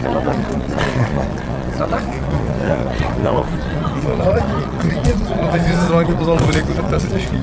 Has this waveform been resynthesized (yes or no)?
yes